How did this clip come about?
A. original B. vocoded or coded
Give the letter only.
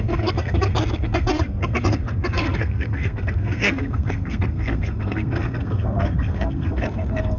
B